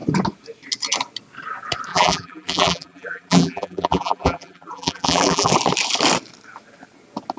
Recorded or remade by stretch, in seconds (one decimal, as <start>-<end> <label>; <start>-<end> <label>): 0.0-1.9 recorded; 1.9-5.5 remade; 5.5-7.4 recorded